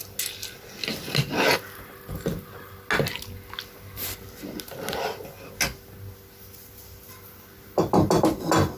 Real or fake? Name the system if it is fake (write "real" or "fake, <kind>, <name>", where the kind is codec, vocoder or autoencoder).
real